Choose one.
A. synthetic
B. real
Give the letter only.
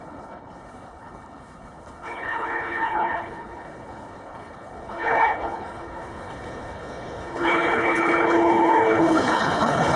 A